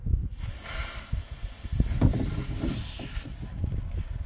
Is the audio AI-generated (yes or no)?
no